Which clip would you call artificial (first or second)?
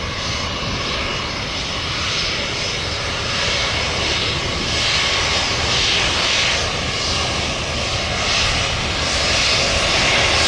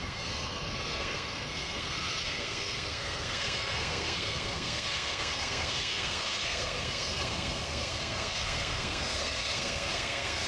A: second